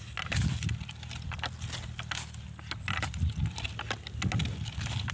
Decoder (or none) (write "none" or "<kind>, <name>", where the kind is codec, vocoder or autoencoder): none